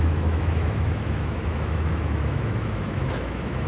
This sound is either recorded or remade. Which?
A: remade